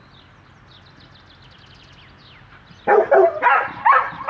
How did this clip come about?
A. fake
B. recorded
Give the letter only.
B